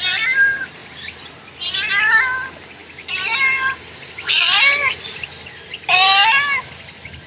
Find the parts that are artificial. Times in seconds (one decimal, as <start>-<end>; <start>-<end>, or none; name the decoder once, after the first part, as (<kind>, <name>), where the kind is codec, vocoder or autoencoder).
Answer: none